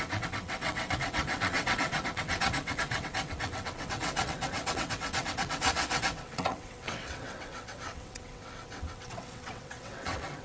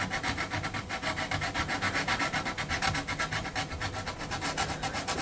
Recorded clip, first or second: second